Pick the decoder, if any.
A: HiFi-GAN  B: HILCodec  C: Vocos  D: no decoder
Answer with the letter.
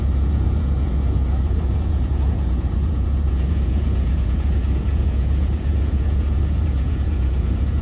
C